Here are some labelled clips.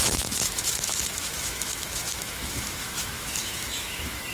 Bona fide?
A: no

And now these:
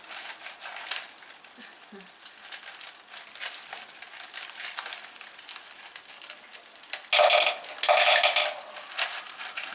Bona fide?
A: yes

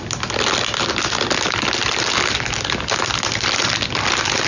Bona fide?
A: yes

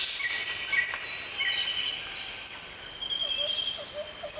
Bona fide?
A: yes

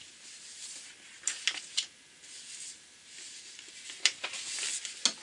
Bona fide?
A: yes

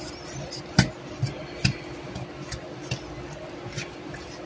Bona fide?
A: yes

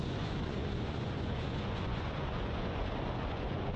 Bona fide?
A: no